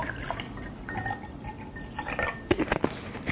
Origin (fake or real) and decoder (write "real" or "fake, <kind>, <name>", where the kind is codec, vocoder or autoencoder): real